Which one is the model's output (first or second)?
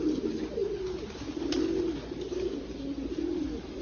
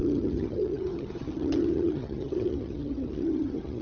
second